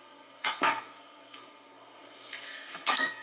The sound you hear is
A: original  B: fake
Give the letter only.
B